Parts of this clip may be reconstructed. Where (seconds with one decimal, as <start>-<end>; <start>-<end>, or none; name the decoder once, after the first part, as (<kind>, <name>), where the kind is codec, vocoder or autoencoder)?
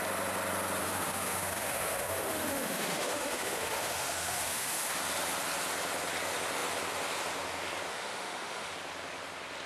0.8-5.0 (autoencoder, DAC-VAE); 7.9-8.7